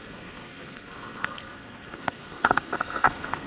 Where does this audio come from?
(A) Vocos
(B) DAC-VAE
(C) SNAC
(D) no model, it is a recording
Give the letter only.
C